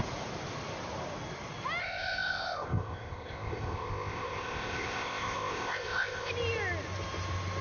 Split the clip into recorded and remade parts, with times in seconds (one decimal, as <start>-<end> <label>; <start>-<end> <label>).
0.0-1.8 recorded; 1.8-6.3 remade; 6.3-7.6 recorded